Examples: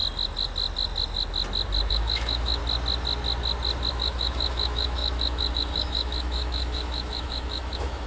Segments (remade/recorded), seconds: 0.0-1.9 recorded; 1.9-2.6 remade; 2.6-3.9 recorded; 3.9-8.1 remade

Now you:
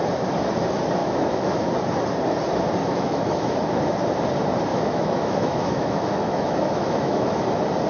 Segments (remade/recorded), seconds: 0.0-1.0 recorded; 1.0-1.6 remade; 1.6-2.8 recorded; 2.8-3.7 remade; 3.7-4.7 recorded; 4.7-7.4 remade; 7.4-7.9 recorded

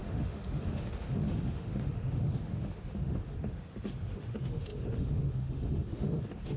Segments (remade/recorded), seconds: 0.0-6.6 remade

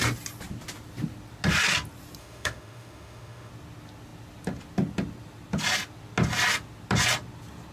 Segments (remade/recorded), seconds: 0.0-2.2 recorded; 2.2-3.5 remade; 3.5-7.7 recorded